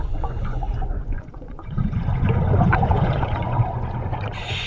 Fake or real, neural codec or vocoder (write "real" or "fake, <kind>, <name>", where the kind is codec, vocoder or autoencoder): fake, vocoder, Vocos